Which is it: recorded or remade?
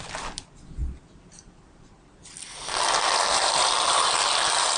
recorded